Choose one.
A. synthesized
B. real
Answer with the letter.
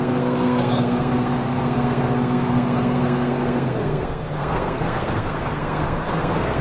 A